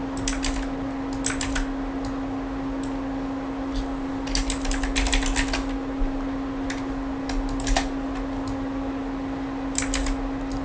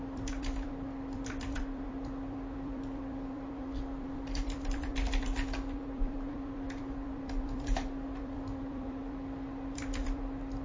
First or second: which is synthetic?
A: second